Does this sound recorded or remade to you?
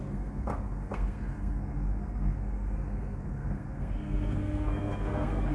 remade